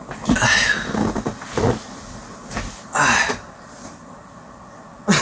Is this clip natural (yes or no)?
yes